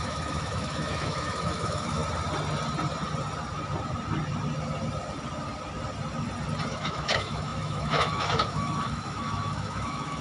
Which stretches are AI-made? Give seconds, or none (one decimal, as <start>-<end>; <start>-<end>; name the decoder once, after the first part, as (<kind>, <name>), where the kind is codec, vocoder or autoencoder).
0.0-2.0 (autoencoder, DAC-VAE); 6.7-10.2